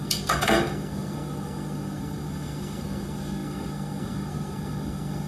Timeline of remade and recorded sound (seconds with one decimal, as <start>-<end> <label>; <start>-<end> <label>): 0.0-5.3 remade